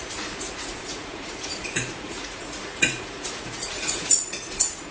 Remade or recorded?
remade